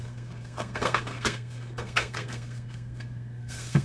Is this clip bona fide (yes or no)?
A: no